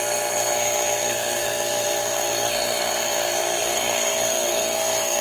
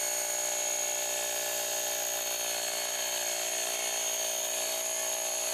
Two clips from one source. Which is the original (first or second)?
second